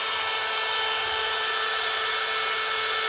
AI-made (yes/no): no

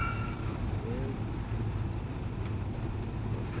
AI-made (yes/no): no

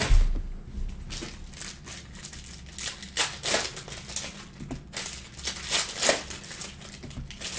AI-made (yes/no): no